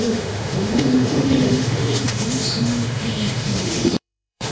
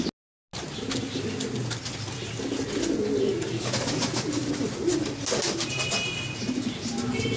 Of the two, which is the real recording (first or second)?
second